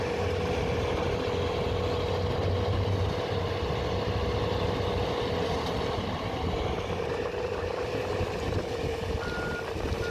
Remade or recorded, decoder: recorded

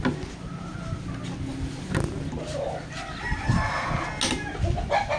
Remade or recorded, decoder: recorded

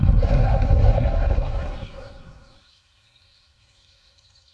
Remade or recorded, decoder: remade, codec, SNAC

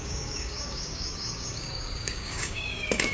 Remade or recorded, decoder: remade, codec, DAC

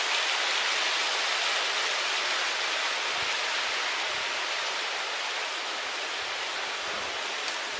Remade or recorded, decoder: recorded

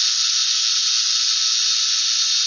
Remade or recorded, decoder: recorded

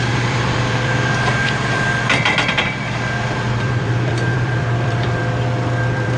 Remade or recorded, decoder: remade, vocoder, BigVGAN v2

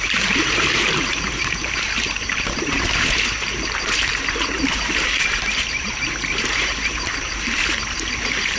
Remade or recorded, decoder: remade, vocoder, BigVGAN v2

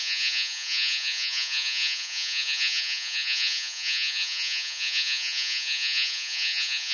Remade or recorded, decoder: remade, vocoder, Vocos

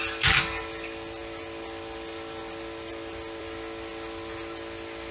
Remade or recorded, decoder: recorded